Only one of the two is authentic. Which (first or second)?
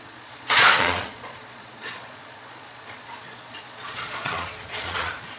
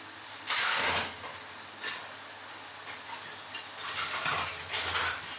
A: second